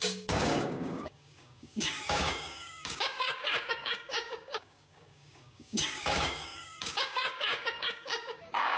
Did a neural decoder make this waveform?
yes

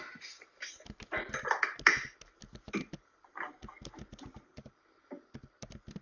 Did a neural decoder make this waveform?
no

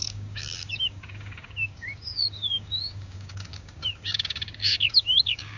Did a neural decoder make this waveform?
yes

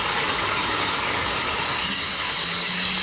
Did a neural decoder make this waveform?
yes